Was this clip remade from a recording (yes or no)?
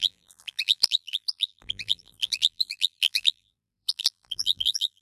yes